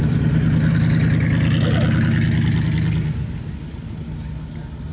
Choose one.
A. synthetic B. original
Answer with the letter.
B